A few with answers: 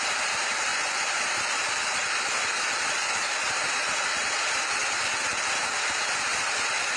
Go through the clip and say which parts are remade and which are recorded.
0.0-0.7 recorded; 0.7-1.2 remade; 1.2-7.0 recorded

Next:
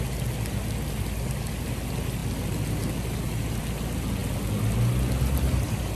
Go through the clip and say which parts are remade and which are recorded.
0.0-6.0 recorded

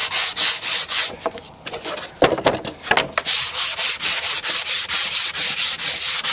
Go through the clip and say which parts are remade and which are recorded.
0.0-1.9 remade; 1.9-6.3 recorded

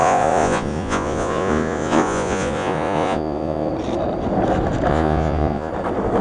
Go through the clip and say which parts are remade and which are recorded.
0.0-3.7 remade; 3.7-4.9 recorded; 4.9-5.7 remade; 5.7-6.2 recorded

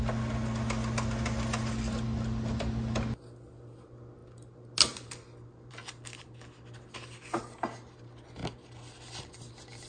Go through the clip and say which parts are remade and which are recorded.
0.0-9.9 recorded

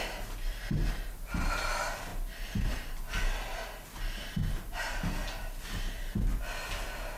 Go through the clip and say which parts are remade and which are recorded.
0.0-7.2 recorded